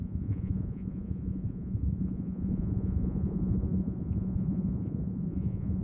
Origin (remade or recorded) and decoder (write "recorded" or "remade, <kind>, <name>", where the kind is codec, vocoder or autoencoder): remade, vocoder, Vocos